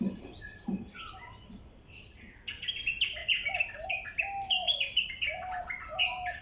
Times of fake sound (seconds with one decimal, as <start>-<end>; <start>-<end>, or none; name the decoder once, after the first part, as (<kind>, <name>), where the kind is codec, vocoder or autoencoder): none